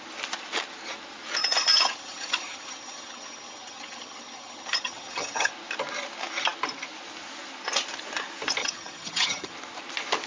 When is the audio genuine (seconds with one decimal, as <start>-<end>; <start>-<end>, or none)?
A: 0.0-1.4; 5.5-8.6; 9.5-10.3